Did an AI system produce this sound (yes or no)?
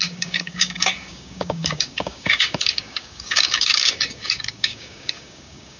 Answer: yes